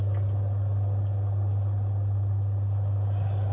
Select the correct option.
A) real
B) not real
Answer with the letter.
A